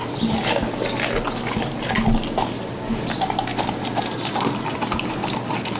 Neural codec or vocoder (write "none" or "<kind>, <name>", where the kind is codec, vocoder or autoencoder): none